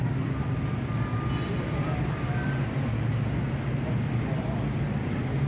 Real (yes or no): yes